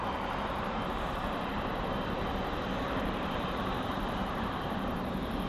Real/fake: fake